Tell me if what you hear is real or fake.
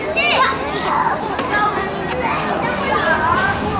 real